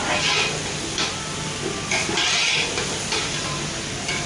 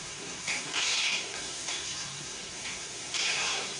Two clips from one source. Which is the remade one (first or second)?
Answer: second